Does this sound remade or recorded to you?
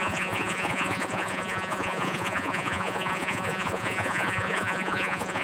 remade